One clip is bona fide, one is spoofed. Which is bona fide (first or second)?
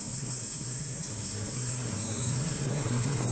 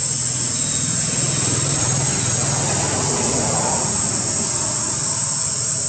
second